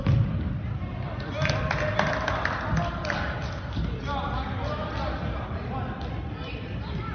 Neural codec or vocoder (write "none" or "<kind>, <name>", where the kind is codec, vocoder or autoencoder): none